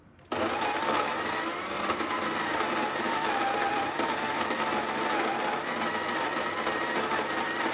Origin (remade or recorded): recorded